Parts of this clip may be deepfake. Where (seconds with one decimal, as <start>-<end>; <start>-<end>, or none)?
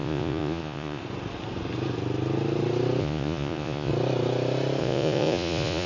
0.0-1.0; 3.0-3.9; 4.8-5.9